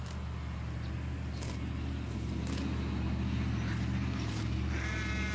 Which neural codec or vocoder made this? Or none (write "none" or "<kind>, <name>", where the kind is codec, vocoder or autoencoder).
none